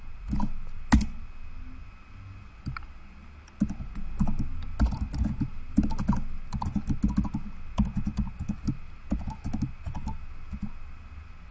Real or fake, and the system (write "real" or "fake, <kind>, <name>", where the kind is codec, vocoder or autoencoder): real